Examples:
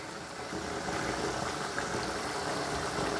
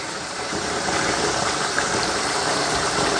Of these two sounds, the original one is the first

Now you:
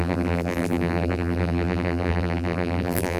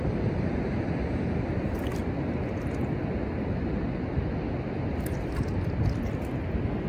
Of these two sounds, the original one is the second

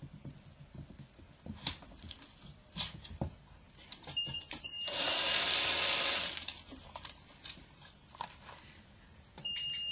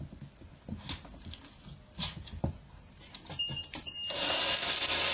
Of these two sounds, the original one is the second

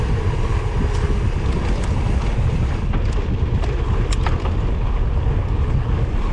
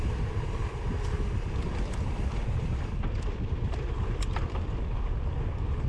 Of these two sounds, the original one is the first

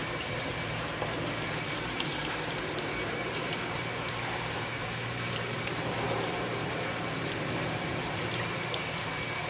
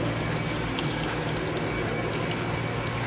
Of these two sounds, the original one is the second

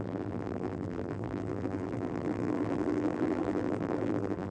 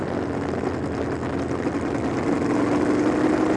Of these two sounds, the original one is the second